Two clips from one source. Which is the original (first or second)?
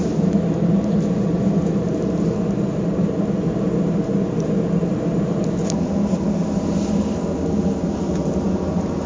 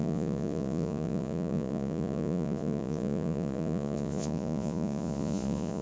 first